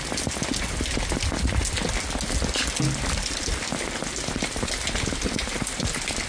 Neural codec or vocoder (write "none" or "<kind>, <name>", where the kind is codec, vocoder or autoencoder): none